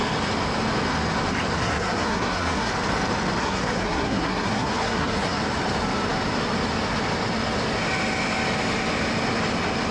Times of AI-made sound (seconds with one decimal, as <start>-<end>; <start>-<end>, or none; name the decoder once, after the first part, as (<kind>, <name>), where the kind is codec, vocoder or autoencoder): 1.6-2.7 (codec, SNAC); 3.4-5.4

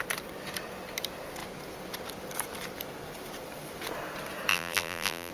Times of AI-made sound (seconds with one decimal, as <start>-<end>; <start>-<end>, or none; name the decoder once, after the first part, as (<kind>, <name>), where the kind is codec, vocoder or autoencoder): 4.5-5.3 (vocoder, BigVGAN v2)

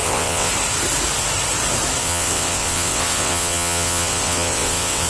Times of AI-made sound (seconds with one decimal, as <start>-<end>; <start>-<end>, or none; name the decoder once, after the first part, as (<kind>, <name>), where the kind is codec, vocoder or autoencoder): 0.0-0.5 (vocoder, WaveNeXt); 2.0-5.1